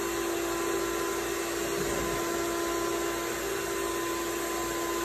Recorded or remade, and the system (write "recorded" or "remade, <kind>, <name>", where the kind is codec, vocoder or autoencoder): recorded